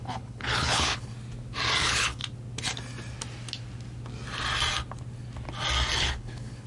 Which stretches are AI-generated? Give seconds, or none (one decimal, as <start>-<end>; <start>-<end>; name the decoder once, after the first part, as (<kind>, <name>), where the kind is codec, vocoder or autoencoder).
0.0-1.1 (codec, HILCodec); 1.8-2.2; 6.0-6.7